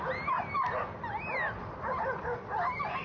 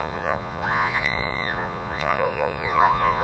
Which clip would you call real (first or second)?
first